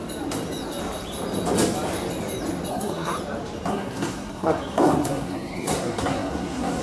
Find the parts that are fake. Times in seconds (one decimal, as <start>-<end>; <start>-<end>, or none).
2.7-3.1; 3.7-6.8